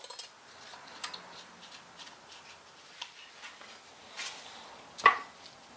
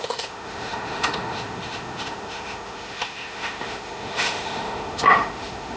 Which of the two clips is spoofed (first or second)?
second